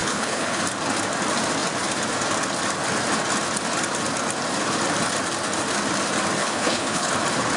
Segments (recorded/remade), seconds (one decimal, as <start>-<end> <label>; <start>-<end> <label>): 0.0-0.6 remade; 0.6-6.4 recorded; 6.4-7.1 remade; 7.1-7.6 recorded